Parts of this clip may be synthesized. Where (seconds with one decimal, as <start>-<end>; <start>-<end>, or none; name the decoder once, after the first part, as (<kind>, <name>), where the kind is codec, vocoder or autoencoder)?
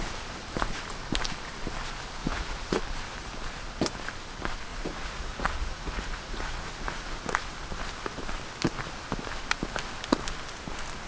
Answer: 2.2-2.8 (vocoder, Vocos); 4.7-7.2